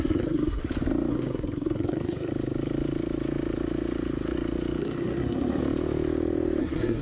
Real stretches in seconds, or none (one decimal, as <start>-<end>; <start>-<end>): 0.6-1.1; 2.3-4.8; 5.6-6.6